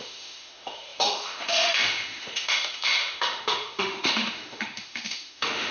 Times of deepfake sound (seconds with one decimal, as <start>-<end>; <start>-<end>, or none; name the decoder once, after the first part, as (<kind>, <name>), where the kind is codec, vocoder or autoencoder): 0.0-5.7 (autoencoder, DAC-VAE)